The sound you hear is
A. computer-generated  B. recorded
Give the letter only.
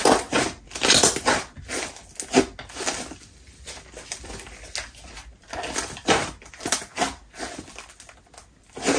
B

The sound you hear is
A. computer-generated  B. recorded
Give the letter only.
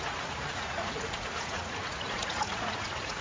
A